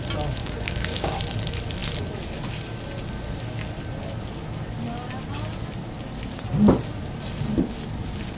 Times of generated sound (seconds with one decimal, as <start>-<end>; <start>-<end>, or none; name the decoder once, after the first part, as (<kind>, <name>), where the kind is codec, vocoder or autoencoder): 0.4-1.2 (codec, DAC)